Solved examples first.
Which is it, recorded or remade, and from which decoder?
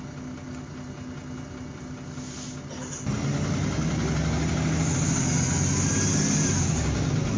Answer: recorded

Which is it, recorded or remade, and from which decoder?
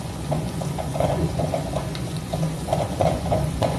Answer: remade, vocoder, Vocos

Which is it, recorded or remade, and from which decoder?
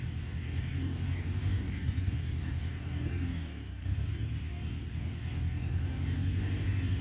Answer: remade, codec, DAC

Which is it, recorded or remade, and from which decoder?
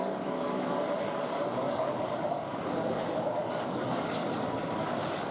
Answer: remade, codec, DAC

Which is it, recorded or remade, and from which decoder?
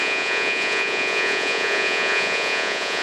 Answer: remade, vocoder, Vocos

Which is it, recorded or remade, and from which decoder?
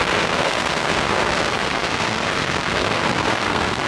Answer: remade, codec, SNAC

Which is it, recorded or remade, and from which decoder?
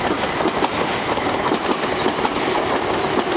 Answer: recorded